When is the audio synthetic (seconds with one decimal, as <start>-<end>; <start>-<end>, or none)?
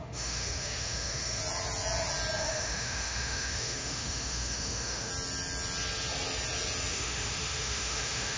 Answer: 0.0-1.4; 2.4-5.1; 6.9-8.4